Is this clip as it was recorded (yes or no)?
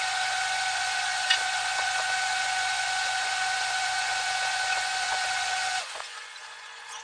no